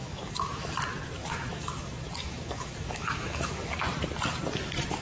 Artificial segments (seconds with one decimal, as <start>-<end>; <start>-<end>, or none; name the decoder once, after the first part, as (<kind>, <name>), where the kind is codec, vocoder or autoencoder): 0.0-0.7 (autoencoder, DAC-VAE); 1.2-3.8